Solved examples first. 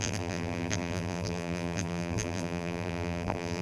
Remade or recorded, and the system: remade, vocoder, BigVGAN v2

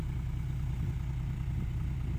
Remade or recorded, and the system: recorded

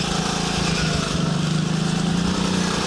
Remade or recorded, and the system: recorded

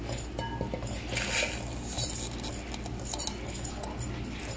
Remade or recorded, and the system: recorded